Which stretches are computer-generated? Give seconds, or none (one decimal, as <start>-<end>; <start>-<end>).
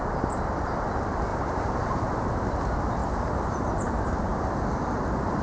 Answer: 1.3-2.3; 3.0-4.4